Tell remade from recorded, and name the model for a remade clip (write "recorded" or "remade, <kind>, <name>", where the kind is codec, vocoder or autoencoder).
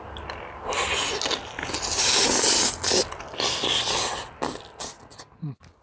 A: recorded